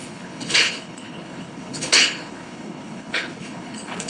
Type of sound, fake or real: fake